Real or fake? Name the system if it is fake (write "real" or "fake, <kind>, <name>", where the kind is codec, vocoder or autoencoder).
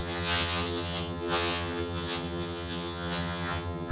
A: fake, vocoder, HiFi-GAN